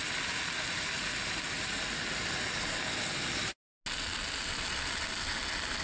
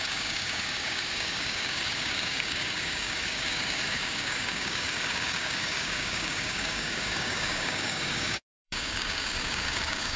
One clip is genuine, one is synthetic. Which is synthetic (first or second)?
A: second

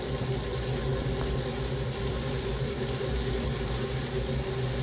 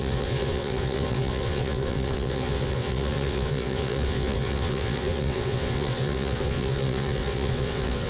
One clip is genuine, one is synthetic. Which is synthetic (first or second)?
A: second